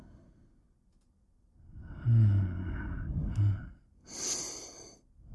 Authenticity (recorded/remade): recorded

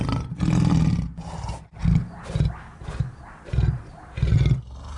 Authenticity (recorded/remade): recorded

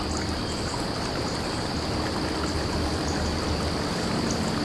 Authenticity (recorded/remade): recorded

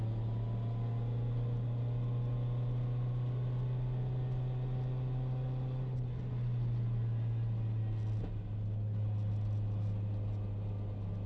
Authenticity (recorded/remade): recorded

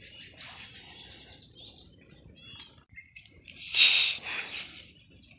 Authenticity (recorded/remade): recorded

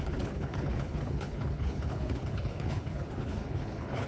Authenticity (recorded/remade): remade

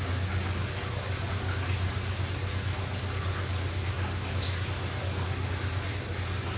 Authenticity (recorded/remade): recorded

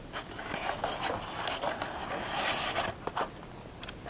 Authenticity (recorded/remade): recorded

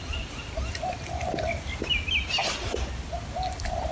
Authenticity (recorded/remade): recorded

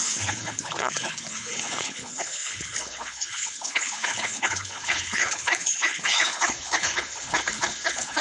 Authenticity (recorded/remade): remade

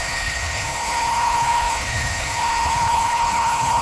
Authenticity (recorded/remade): remade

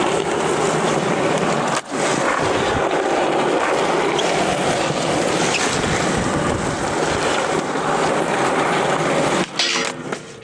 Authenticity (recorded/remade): recorded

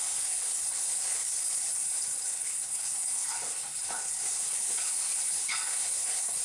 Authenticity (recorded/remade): remade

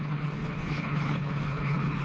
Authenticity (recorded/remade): remade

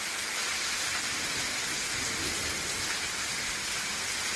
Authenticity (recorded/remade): recorded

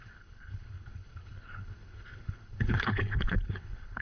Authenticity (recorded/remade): remade